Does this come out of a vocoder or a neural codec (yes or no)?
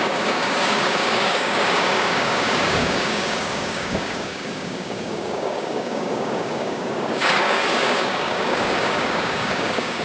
yes